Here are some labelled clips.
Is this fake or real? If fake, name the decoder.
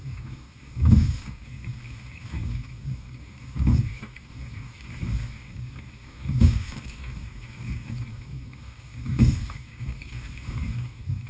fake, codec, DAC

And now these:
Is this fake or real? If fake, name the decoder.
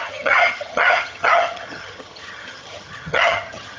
fake, vocoder, HiFi-GAN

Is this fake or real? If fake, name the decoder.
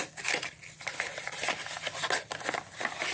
real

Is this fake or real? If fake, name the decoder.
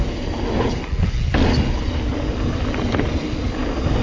real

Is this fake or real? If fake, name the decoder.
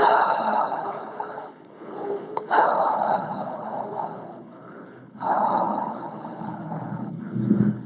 fake, codec, HILCodec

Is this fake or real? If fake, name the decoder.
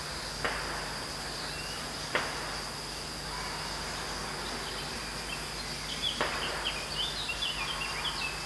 real